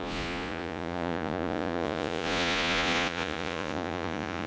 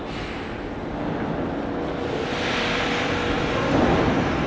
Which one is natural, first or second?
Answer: second